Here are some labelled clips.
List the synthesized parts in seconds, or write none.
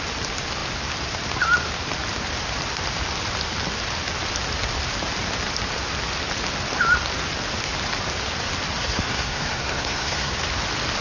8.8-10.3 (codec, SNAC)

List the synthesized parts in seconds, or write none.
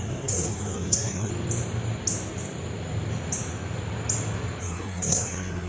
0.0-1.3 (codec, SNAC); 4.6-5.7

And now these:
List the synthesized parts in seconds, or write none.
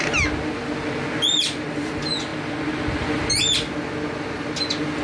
none